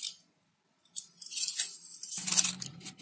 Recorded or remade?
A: recorded